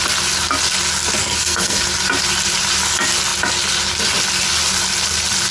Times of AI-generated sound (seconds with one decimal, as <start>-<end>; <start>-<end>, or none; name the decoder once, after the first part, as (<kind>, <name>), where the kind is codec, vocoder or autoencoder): 1.2-1.8 (codec, SNAC)